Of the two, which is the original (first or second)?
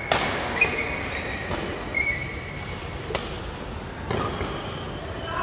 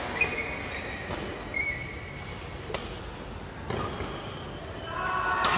second